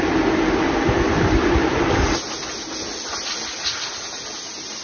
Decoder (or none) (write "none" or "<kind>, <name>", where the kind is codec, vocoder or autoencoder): none